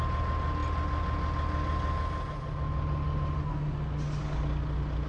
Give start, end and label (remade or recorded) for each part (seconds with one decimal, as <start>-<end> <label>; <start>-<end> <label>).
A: 0.0-5.1 recorded